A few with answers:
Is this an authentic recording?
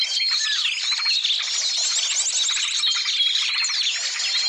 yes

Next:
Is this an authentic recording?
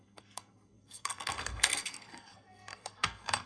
no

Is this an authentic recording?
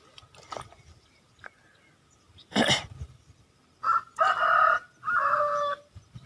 no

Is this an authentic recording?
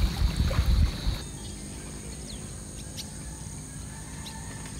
yes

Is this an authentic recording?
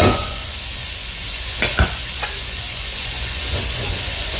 no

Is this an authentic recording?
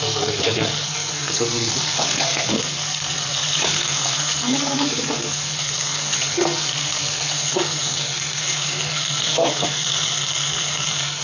no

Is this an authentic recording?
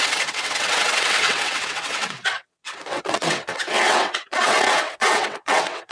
no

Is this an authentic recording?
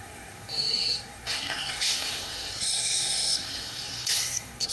no